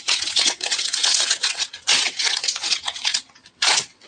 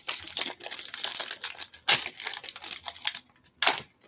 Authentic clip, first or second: second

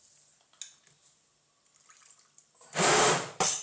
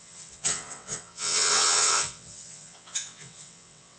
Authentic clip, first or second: first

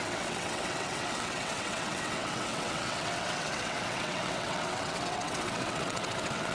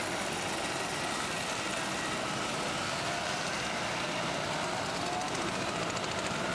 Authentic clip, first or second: second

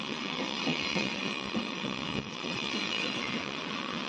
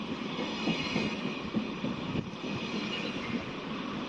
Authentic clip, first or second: second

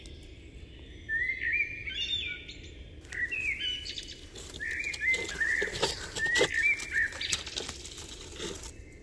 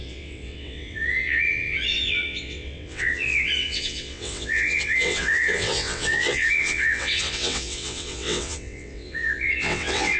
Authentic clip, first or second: first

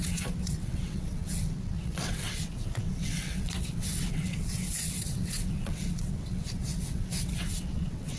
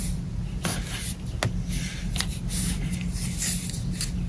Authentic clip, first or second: second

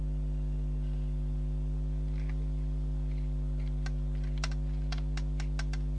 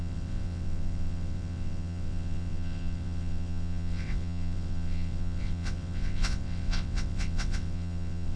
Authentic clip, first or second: first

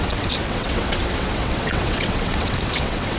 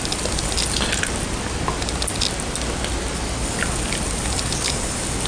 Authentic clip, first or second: second